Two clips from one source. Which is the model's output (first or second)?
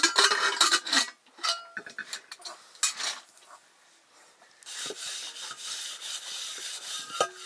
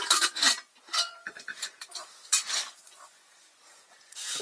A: second